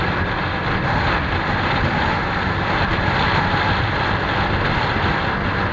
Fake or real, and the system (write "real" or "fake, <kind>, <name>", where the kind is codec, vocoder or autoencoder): real